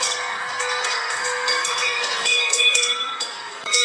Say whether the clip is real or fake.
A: fake